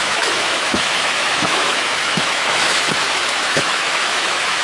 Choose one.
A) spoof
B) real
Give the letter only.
A